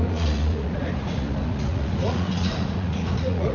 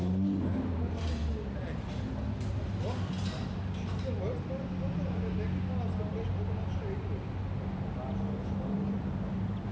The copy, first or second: first